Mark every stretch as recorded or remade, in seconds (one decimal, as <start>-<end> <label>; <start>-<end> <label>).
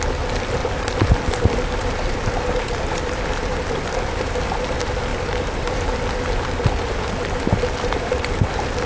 0.0-0.6 recorded; 0.6-3.8 remade; 3.8-8.9 recorded